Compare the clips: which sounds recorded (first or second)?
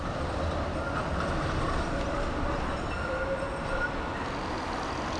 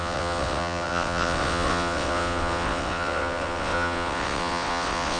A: first